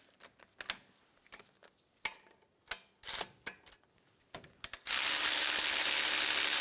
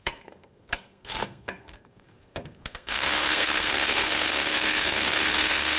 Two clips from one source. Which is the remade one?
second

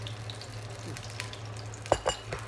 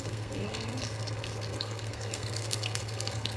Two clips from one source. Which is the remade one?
second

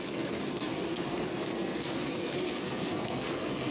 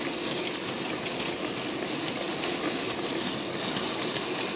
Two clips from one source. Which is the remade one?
first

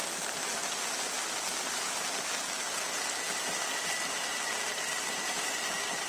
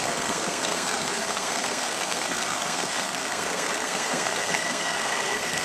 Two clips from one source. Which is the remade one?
second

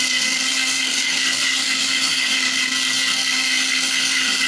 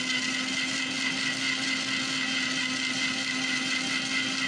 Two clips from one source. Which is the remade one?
first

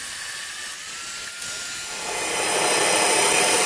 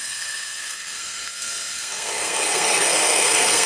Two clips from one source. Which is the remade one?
second